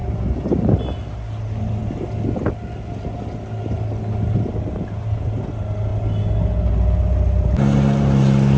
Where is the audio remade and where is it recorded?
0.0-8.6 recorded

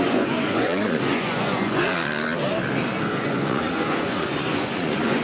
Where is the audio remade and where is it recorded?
0.0-1.9 remade; 1.9-3.0 recorded; 3.0-5.2 remade